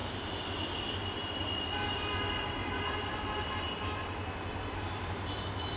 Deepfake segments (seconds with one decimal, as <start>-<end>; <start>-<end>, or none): none